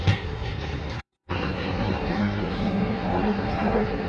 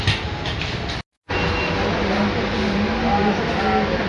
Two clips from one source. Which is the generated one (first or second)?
first